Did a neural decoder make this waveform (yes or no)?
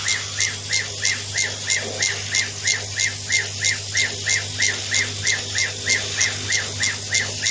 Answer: no